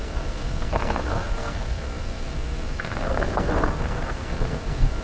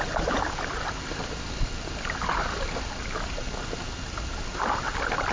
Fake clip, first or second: first